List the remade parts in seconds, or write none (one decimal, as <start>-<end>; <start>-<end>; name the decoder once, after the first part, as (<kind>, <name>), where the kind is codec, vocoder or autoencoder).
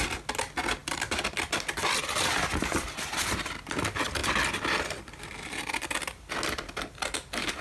none